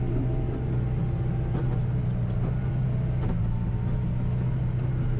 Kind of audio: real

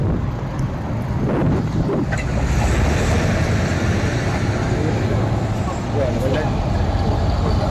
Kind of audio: real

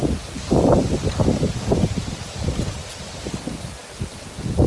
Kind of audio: real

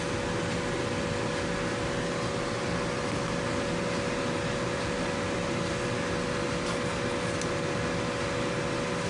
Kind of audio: real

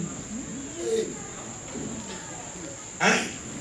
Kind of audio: real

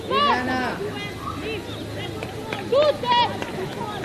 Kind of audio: real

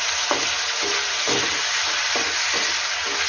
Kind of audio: real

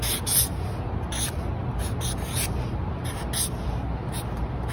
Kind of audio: real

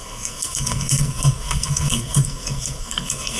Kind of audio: fake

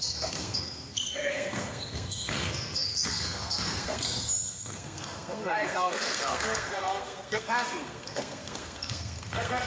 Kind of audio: fake